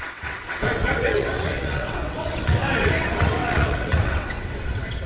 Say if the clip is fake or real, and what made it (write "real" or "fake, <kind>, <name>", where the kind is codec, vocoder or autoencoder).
fake, vocoder, WaveNeXt